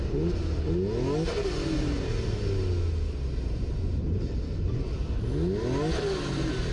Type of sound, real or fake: real